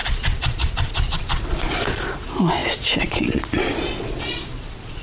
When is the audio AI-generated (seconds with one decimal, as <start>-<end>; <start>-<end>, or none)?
0.0-5.0

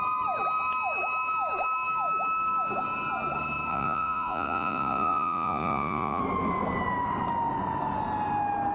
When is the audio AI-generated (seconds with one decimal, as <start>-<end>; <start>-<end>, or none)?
3.7-6.2